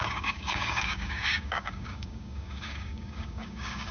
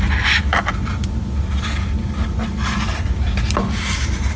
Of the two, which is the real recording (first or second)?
second